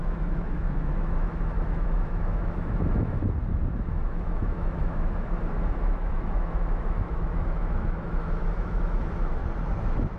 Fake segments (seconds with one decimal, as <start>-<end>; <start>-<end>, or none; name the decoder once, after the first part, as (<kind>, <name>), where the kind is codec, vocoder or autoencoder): 0.0-3.2 (autoencoder, DAC-VAE); 3.8-9.4